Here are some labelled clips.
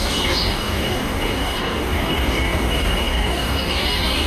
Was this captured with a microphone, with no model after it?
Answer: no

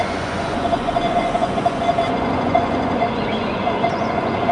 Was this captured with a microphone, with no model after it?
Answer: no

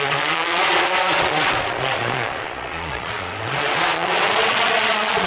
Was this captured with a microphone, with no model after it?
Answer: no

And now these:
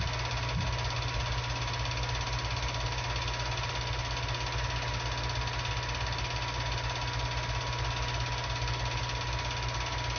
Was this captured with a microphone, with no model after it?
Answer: yes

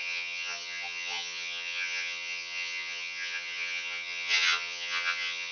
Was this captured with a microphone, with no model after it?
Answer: no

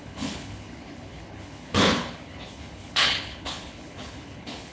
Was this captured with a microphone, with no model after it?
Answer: no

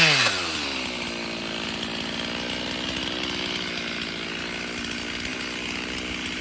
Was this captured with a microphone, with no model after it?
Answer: yes